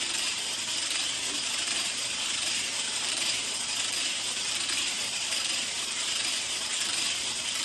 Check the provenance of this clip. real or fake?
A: fake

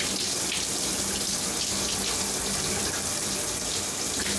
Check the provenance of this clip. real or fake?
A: real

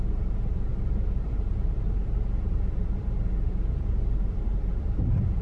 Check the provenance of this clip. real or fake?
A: fake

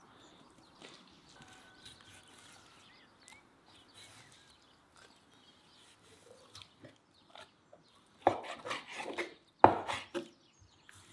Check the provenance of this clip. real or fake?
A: real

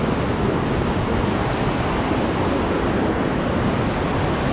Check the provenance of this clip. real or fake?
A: real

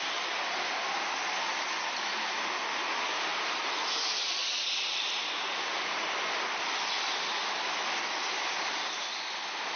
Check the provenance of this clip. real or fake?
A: real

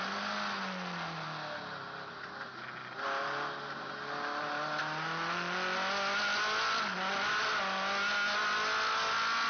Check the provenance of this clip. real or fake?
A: real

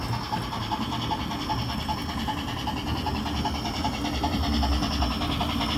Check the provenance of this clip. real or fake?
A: real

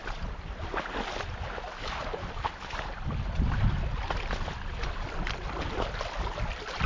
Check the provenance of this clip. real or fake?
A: real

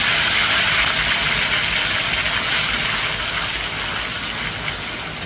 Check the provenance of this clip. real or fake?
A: real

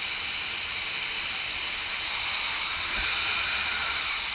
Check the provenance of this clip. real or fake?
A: real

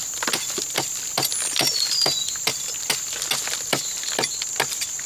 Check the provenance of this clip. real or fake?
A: real